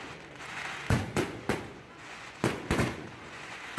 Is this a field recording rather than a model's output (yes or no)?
no